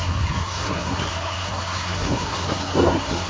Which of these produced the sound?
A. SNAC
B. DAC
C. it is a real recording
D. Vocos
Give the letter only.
A